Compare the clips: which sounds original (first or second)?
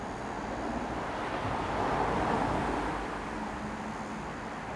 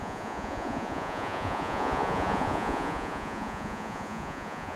first